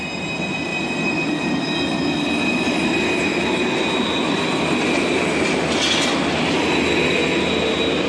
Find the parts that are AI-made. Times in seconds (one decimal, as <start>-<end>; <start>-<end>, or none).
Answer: none

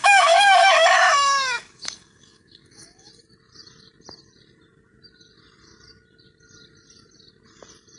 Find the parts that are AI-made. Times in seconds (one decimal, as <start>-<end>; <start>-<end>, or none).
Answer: 0.0-3.1